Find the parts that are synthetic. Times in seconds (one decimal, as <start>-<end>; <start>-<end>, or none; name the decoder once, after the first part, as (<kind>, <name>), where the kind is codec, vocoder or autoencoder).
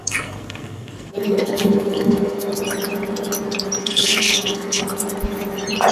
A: 0.0-2.5 (codec, SNAC); 3.8-4.8